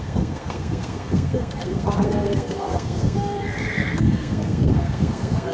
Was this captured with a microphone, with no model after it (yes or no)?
no